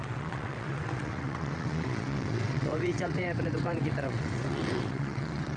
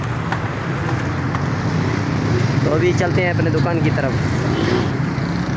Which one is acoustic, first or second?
second